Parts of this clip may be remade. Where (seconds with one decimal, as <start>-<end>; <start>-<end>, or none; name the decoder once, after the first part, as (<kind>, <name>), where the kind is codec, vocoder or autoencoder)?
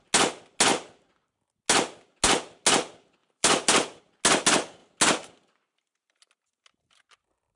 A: 3.2-4.0 (vocoder, BigVGAN v2)